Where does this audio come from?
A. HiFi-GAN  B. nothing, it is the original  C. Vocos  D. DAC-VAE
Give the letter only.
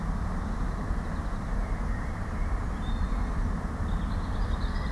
B